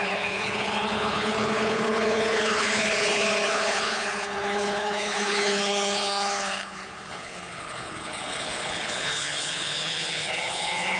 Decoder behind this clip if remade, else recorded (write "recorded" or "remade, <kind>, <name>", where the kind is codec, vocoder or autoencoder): remade, codec, HILCodec